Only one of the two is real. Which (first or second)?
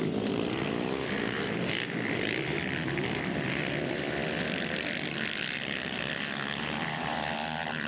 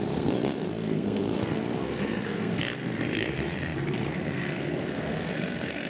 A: first